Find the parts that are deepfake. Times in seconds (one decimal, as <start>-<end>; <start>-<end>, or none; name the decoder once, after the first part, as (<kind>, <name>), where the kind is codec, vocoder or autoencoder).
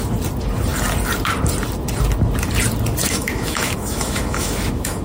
3.0-5.0 (autoencoder, DAC-VAE)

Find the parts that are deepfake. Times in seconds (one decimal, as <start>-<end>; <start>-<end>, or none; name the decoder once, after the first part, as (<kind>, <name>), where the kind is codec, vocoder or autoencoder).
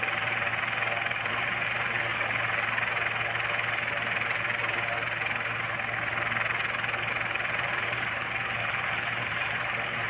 0.0-0.5 (vocoder, BigVGAN v2); 1.3-2.1; 7.1-10.1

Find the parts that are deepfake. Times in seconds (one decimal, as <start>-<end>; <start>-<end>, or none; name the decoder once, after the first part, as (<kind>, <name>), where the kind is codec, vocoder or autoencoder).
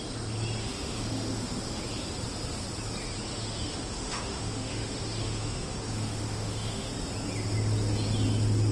0.6-1.8 (autoencoder, DAC-VAE); 3.3-6.9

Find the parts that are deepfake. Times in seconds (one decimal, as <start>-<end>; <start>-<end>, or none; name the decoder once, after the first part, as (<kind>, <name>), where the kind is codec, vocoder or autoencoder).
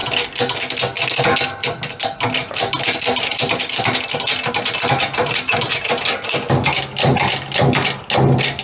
5.2-5.8 (vocoder, BigVGAN v2)